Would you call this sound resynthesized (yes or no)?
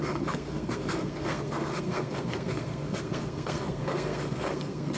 yes